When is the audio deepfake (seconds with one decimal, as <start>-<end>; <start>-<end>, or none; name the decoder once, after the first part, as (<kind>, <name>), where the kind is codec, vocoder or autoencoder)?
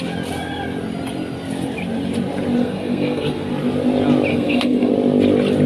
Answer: 2.6-3.5 (codec, SNAC); 4.3-4.9